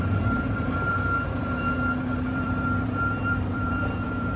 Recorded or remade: remade